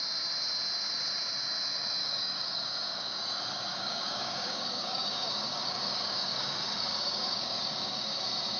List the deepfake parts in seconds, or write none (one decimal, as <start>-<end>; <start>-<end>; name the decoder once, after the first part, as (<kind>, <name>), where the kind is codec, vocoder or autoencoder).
2.0-3.2 (codec, DAC); 3.7-8.2